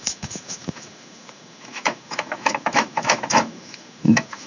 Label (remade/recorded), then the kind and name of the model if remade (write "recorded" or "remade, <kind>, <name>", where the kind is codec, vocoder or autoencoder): remade, autoencoder, DAC-VAE